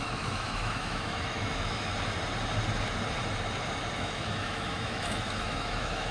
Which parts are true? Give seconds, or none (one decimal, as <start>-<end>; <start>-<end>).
1.9-3.9